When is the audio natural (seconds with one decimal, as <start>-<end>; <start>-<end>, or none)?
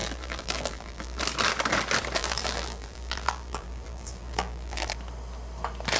1.2-2.2; 4.9-6.0